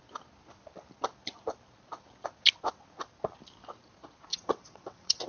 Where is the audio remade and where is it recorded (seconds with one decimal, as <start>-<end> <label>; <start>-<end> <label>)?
0.0-4.3 recorded; 4.3-5.3 remade